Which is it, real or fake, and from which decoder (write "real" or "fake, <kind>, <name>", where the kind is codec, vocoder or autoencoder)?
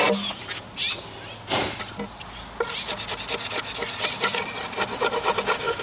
real